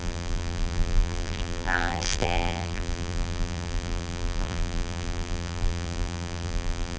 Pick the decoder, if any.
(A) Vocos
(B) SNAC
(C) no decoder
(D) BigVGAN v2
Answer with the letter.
D